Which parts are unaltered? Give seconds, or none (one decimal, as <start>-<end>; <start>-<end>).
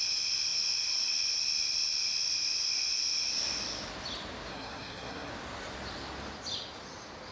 0.0-4.5; 5.3-7.3